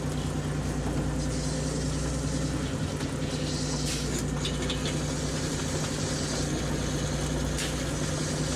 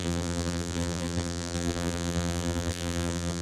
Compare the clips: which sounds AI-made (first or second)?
second